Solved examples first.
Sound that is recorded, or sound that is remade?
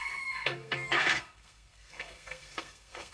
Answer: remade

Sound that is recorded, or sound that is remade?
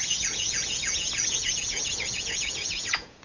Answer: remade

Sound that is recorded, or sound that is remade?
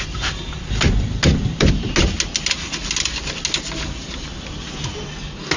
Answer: recorded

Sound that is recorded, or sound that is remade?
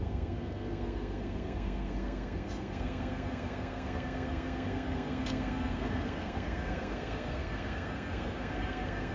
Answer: remade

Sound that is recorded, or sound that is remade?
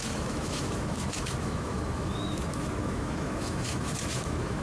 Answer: remade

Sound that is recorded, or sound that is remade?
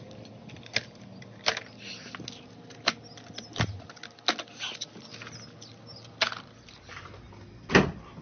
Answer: recorded